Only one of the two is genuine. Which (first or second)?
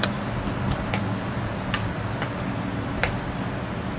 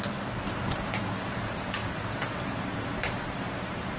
first